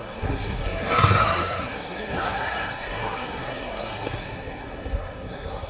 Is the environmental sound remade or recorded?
remade